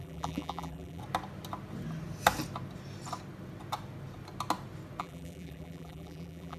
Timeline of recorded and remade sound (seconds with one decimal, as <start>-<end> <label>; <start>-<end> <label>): 0.0-1.0 remade; 1.0-5.0 recorded; 5.0-6.6 remade